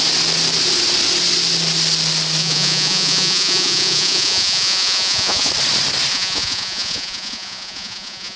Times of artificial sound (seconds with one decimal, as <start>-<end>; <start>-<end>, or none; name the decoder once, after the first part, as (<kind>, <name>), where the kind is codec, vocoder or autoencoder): 2.4-5.5 (vocoder, Vocos); 6.1-8.4